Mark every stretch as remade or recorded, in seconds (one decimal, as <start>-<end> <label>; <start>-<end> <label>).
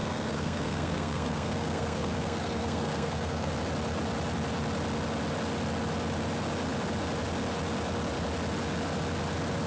0.0-3.5 remade; 3.5-9.7 recorded